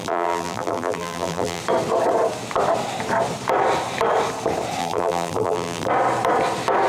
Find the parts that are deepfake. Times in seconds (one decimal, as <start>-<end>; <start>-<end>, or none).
0.0-1.6; 4.8-5.9